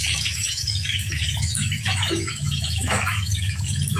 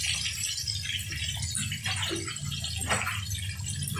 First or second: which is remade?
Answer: first